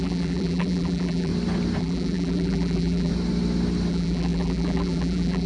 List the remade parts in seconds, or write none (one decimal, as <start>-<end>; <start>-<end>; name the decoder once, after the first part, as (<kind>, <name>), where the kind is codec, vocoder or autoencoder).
0.0-1.3 (vocoder, BigVGAN v2); 1.8-3.1; 3.9-5.5